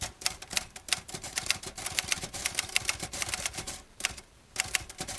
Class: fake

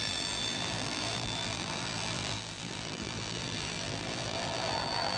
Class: fake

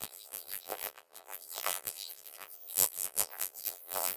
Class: fake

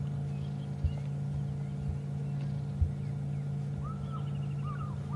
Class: real